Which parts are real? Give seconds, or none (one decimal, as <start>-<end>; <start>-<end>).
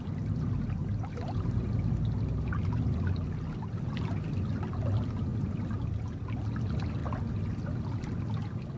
0.0-0.8; 1.7-8.8